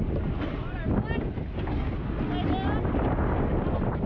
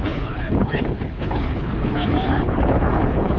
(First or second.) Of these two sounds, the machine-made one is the second